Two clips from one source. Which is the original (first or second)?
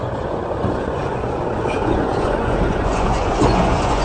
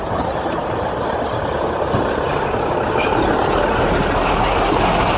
second